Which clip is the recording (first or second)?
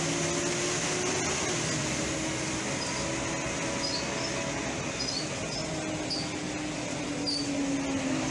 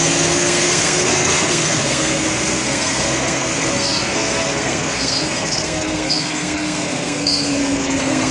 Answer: first